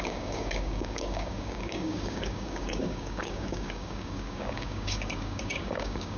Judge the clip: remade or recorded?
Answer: remade